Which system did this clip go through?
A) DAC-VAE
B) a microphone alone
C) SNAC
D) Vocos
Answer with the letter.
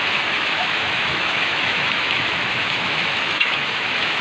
A